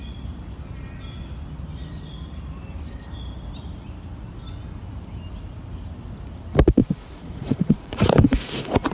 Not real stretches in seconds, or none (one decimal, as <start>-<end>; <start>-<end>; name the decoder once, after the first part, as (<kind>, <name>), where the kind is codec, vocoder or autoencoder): 6.8-8.9 (vocoder, Vocos)